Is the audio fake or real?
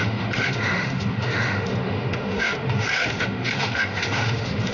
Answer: fake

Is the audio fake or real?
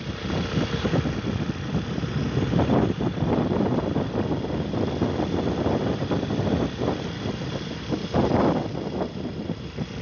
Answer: real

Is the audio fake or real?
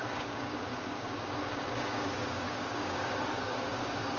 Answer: fake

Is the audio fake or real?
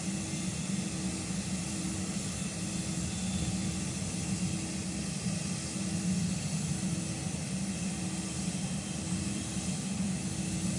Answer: real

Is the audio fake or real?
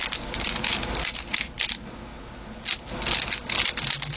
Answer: real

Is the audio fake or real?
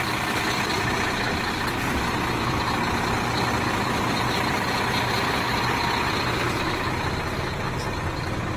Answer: real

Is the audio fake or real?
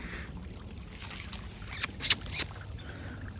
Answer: real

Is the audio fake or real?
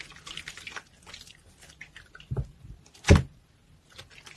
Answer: real